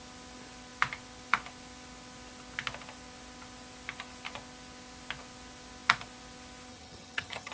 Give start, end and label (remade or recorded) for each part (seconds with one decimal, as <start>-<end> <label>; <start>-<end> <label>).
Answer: 0.0-6.7 recorded; 6.7-7.5 remade